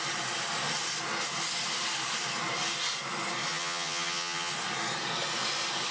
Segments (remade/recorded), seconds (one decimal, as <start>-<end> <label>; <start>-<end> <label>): 0.0-3.5 recorded; 3.5-4.5 remade; 4.5-5.9 recorded